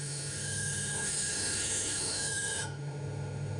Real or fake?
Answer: fake